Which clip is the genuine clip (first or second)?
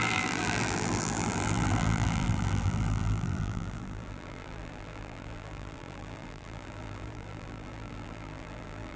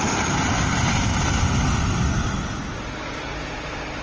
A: second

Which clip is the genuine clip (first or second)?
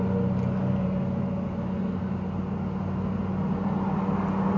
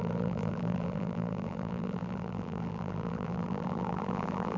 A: first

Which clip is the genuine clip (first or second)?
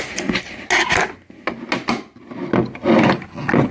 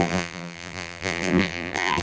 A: first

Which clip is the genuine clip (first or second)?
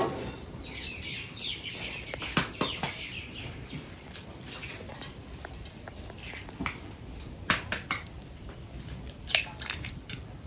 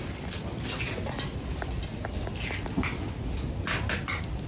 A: second